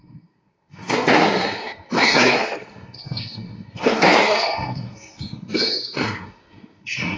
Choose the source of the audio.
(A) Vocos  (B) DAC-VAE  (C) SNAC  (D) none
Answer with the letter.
C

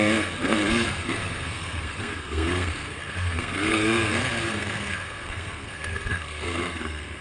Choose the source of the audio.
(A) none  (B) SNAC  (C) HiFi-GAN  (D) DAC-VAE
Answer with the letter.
B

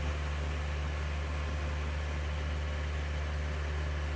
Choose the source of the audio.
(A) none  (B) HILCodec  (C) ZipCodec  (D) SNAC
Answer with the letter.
A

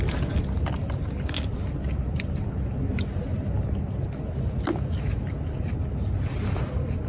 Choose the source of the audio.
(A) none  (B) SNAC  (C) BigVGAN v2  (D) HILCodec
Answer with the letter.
A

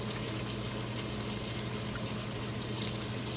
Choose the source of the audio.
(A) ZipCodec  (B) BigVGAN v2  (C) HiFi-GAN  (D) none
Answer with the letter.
D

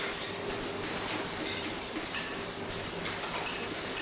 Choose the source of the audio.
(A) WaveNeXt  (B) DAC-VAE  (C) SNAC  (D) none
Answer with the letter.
D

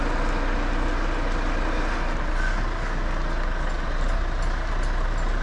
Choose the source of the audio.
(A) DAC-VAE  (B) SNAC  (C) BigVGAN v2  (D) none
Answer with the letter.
D